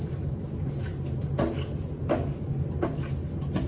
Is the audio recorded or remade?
recorded